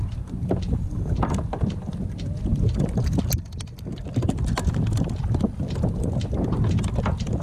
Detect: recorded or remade recorded